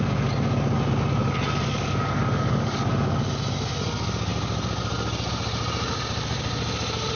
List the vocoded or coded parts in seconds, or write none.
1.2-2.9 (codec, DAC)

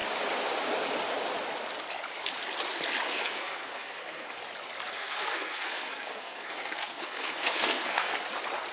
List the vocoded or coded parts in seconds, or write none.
3.1-4.3 (codec, SNAC); 4.9-8.1

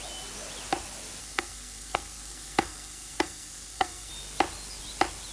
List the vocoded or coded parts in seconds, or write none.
1.2-4.1 (codec, SNAC)

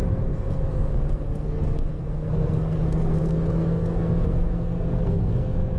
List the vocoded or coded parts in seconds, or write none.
0.0-5.8 (codec, SNAC)

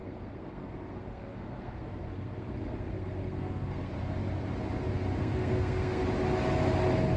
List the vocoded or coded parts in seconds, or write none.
0.0-3.9 (codec, SNAC); 5.2-6.0

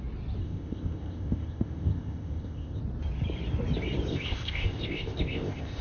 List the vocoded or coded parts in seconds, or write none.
0.4-2.8 (codec, ZipCodec); 4.1-5.8

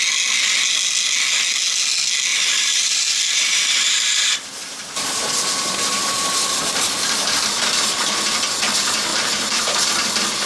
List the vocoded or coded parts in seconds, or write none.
2.3-6.6 (vocoder, BigVGAN v2); 9.1-9.9